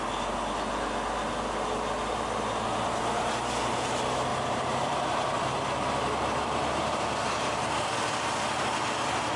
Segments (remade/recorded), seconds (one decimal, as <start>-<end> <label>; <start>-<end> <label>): 0.0-4.3 recorded; 4.3-5.5 remade; 5.5-6.3 recorded; 6.3-7.3 remade; 7.3-9.4 recorded